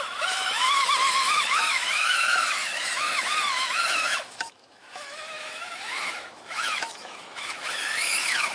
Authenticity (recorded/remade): remade